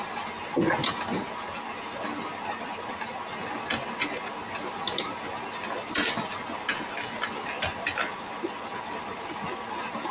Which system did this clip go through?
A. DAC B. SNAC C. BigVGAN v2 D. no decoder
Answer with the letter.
D